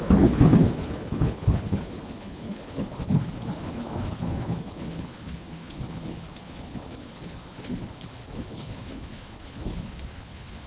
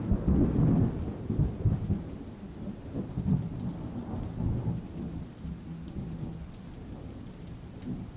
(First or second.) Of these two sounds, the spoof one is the first